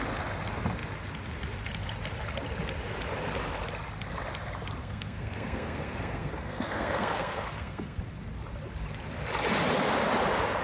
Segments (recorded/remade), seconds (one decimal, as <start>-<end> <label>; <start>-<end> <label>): 0.0-4.8 recorded; 4.8-8.0 remade; 8.0-10.6 recorded